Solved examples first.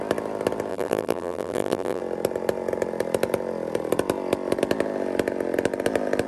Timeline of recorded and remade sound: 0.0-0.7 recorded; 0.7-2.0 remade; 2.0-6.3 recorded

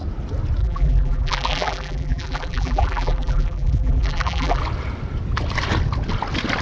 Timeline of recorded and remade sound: 0.0-0.6 recorded; 0.6-4.6 remade; 4.6-6.6 recorded

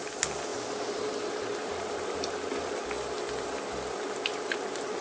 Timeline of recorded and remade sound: 0.0-0.5 recorded; 0.5-2.6 remade; 2.6-5.0 recorded

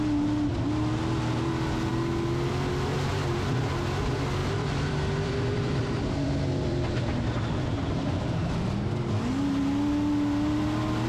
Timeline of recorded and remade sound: 0.0-4.4 recorded; 4.4-8.0 remade; 8.0-11.1 recorded